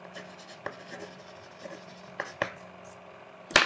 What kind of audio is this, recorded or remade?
recorded